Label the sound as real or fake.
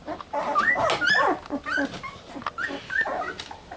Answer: real